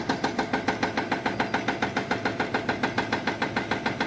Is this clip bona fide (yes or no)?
yes